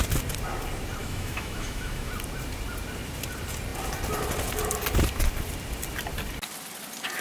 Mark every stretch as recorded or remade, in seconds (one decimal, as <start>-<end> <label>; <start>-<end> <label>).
0.0-1.0 recorded; 1.0-2.1 remade; 2.1-7.2 recorded